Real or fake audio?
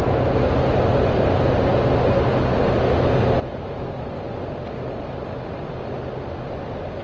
real